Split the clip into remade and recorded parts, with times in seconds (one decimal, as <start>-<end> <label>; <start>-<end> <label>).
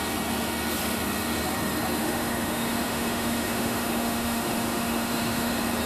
0.0-2.0 recorded; 2.0-5.5 remade; 5.5-5.9 recorded